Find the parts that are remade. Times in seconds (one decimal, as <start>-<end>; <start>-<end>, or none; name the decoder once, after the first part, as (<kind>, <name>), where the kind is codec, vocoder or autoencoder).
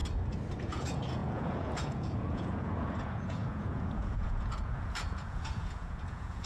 0.6-6.5 (vocoder, Vocos)